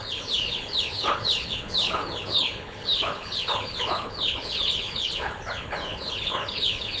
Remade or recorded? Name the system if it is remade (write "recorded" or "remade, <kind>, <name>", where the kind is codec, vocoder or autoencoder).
remade, codec, HILCodec